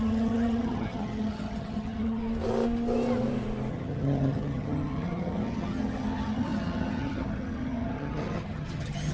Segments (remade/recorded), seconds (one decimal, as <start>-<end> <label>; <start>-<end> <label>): 0.0-2.2 remade; 2.2-3.7 recorded; 3.7-9.1 remade